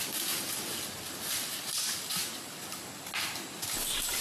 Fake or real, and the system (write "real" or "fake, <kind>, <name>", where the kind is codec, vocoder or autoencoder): real